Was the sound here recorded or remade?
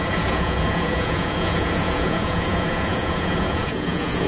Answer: remade